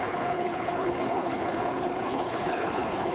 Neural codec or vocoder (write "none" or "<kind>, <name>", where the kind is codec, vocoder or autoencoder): codec, HILCodec